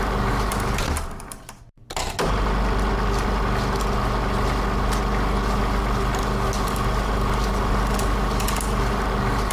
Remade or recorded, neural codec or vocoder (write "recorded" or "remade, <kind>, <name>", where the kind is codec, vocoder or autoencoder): recorded